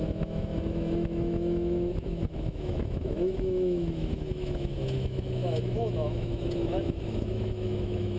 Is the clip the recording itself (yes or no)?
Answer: no